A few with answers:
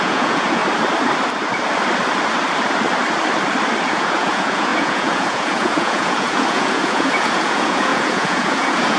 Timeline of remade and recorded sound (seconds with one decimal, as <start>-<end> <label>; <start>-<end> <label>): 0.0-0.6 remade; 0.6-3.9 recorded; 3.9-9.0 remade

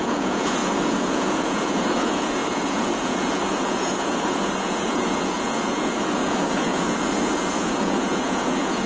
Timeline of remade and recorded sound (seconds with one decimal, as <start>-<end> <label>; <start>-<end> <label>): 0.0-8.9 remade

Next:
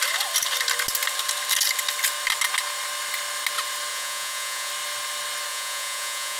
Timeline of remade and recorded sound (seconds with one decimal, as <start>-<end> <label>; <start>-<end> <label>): 0.0-3.9 recorded; 3.9-4.7 remade; 4.7-5.5 recorded; 5.5-6.4 remade

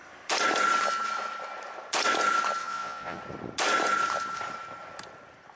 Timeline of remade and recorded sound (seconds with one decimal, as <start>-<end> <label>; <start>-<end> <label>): 0.0-2.6 recorded; 2.6-3.2 remade; 3.2-5.6 recorded

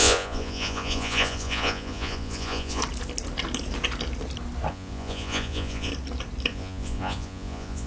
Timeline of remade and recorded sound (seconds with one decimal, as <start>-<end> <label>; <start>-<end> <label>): 0.0-2.8 remade; 2.8-4.7 recorded; 4.7-5.9 remade; 5.9-6.5 recorded; 6.5-7.9 remade